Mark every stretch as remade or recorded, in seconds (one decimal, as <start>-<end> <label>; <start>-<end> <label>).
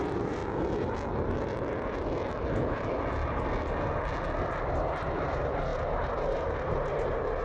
0.0-0.4 remade; 0.4-4.6 recorded; 4.6-7.4 remade